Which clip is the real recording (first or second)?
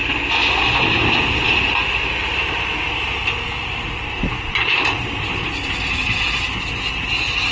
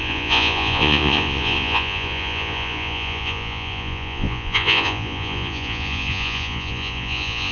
first